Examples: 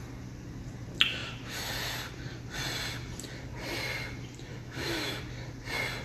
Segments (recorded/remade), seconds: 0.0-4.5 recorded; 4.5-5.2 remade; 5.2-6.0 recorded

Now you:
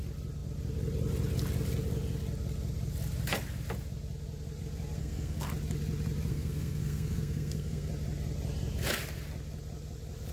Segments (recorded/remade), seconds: 0.0-5.0 recorded; 5.0-5.5 remade; 5.5-6.3 recorded; 6.3-7.9 remade; 7.9-10.3 recorded

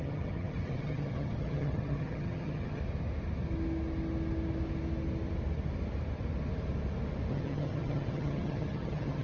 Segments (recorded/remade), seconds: 0.0-2.8 remade; 2.8-7.3 recorded; 7.3-9.2 remade

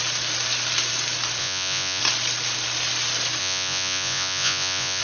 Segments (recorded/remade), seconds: 0.0-1.4 recorded; 1.4-2.0 remade; 2.0-3.4 recorded; 3.4-5.0 remade